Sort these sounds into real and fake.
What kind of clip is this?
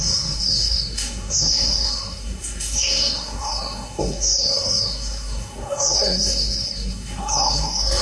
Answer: fake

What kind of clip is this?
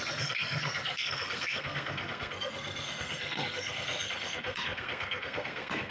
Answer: fake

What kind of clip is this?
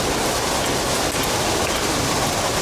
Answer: real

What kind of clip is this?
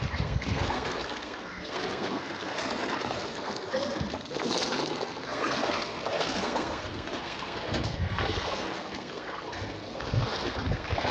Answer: fake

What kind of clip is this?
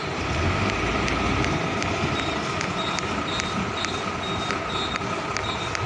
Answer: real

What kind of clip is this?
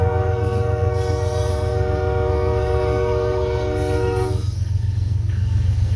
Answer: fake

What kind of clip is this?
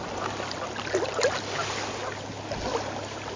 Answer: real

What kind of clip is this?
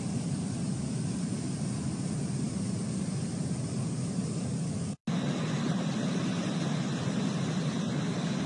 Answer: real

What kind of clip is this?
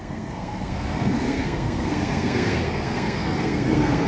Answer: fake